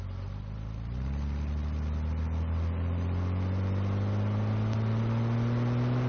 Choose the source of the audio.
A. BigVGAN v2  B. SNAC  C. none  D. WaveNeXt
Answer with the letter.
C